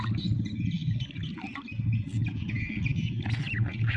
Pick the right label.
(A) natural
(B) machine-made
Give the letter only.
A